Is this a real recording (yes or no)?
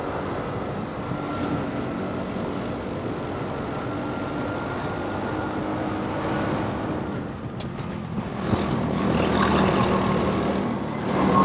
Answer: yes